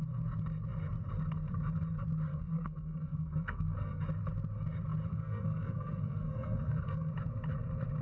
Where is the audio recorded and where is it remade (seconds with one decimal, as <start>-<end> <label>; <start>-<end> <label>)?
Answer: 0.0-2.3 recorded; 2.3-4.0 remade; 4.0-5.1 recorded; 5.1-7.1 remade; 7.1-8.0 recorded